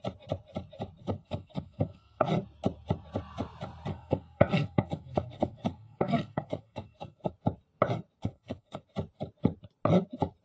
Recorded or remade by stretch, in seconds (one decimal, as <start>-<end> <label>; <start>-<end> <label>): 0.0-1.0 recorded; 1.0-2.3 remade; 2.3-3.9 recorded; 3.9-7.3 remade; 7.3-8.2 recorded; 8.2-8.8 remade; 8.8-10.4 recorded